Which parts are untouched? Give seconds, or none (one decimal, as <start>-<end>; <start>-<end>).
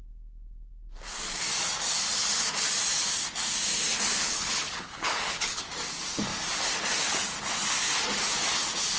0.0-4.2; 5.6-9.0